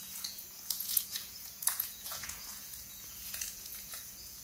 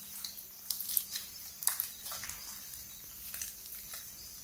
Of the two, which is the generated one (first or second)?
first